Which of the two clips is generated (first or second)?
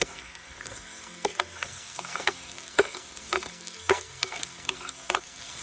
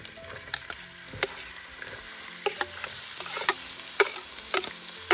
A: first